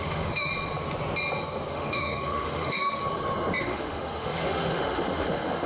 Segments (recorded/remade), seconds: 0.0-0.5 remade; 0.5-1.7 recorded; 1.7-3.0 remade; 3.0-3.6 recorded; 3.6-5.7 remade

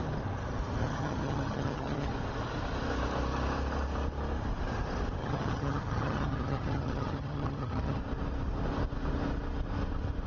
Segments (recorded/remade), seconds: 0.0-0.8 recorded; 0.8-2.1 remade; 2.1-5.2 recorded; 5.2-8.0 remade; 8.0-10.3 recorded

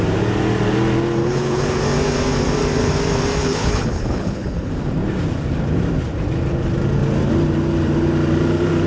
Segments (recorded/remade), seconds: 0.0-1.2 recorded; 1.2-1.8 remade; 1.8-3.4 recorded; 3.4-4.7 remade; 4.7-8.9 recorded

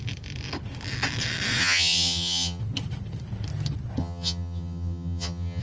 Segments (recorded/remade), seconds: 0.0-1.6 recorded; 1.6-2.6 remade; 2.6-4.0 recorded; 4.0-5.6 remade

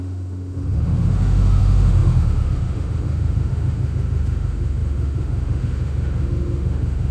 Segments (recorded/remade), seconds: 0.0-7.1 remade

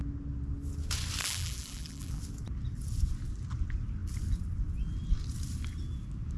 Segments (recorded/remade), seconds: 0.0-1.2 recorded; 1.2-2.2 remade; 2.2-6.4 recorded

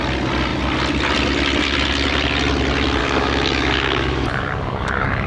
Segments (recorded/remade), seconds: 0.0-3.0 recorded; 3.0-5.3 remade